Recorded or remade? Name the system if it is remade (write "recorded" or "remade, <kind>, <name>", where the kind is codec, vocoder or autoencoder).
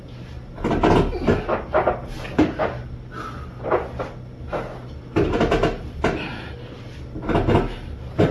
recorded